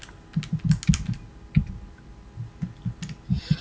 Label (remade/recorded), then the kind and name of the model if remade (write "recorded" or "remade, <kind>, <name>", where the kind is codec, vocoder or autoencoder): recorded